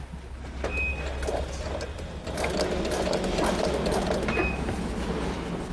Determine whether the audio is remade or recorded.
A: recorded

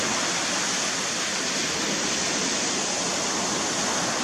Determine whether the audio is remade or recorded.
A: recorded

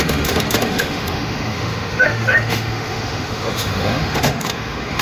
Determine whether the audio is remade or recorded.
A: remade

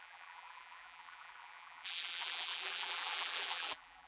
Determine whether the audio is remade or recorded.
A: remade